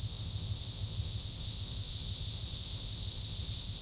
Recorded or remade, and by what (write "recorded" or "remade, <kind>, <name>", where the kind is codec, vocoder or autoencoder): remade, codec, ZipCodec